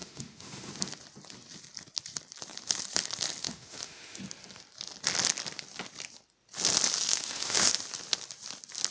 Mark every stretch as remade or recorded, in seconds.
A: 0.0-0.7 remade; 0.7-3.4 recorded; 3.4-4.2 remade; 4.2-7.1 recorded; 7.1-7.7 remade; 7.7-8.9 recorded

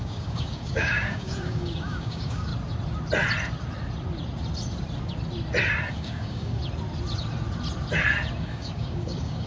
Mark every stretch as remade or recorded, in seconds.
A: 0.0-2.5 remade; 2.5-5.9 recorded; 5.9-6.6 remade; 6.6-8.4 recorded; 8.4-9.5 remade